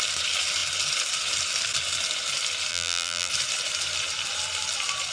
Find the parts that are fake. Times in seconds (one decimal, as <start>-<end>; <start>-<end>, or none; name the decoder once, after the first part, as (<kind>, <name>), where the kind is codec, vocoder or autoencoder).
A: 2.7-3.3 (vocoder, BigVGAN v2)